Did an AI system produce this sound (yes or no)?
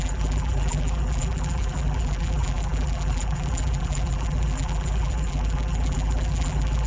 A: yes